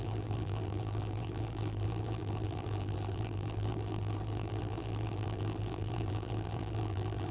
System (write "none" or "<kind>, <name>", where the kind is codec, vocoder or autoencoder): vocoder, BigVGAN v2